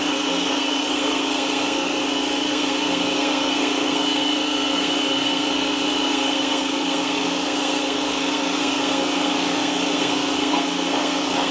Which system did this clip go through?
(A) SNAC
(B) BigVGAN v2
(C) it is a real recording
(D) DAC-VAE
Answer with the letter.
A